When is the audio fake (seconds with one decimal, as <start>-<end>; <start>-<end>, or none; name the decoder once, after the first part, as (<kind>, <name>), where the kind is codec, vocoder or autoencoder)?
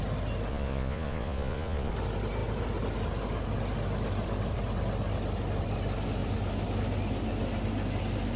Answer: 0.5-1.9 (vocoder, Vocos)